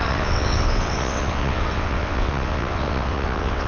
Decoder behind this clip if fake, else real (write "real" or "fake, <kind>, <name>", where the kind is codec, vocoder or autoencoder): fake, vocoder, WaveNeXt